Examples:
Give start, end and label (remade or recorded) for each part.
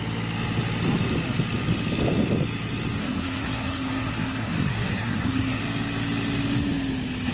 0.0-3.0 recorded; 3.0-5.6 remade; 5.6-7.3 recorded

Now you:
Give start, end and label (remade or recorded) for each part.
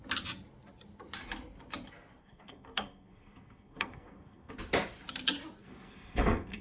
0.0-2.2 recorded; 2.2-4.5 remade; 4.5-5.6 recorded; 5.6-6.6 remade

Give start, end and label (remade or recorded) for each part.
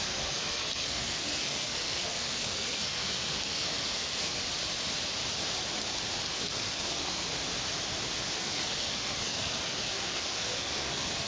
0.0-4.4 remade; 4.4-6.3 recorded; 6.3-7.3 remade; 7.3-8.4 recorded; 8.4-11.3 remade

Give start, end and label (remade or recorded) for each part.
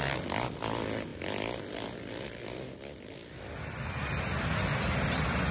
0.0-5.5 recorded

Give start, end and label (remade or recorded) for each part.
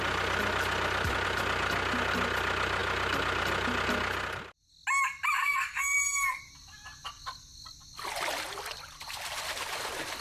0.0-5.4 recorded; 5.4-6.4 remade; 6.4-10.2 recorded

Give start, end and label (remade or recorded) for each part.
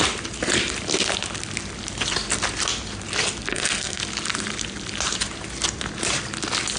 0.0-3.5 recorded; 3.5-4.0 remade; 4.0-6.8 recorded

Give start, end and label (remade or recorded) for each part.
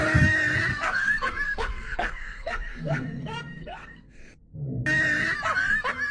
0.0-0.7 recorded; 0.7-4.4 remade; 4.4-6.1 recorded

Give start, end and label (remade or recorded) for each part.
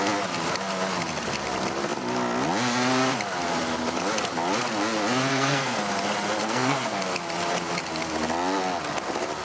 0.0-5.3 recorded; 5.3-5.8 remade; 5.8-6.4 recorded; 6.4-7.0 remade; 7.0-9.4 recorded